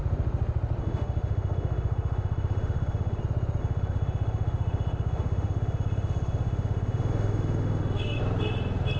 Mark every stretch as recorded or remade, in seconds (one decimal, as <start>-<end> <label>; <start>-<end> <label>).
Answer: 0.0-0.8 recorded; 0.8-3.2 remade; 3.2-3.6 recorded; 3.6-8.2 remade; 8.2-9.0 recorded